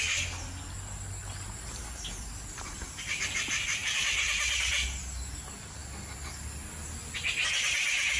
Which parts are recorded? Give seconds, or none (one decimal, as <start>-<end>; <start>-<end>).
0.0-1.2; 3.2-3.8; 4.7-8.2